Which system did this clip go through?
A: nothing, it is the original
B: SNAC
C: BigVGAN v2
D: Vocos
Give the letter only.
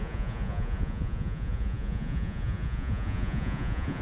D